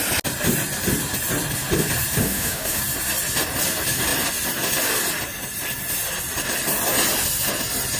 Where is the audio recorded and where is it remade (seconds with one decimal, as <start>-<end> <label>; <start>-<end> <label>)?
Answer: 0.0-2.2 recorded; 2.2-2.8 remade; 2.8-8.0 recorded